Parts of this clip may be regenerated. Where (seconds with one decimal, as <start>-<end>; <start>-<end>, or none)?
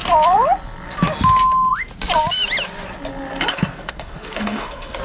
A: 3.5-5.0